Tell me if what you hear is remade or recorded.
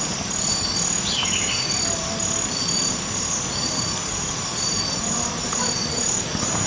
recorded